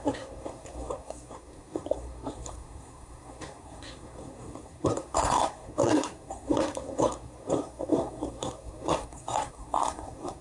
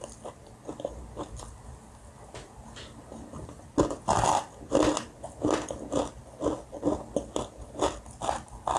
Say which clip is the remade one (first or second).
first